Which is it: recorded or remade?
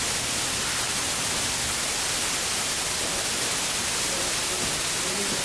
recorded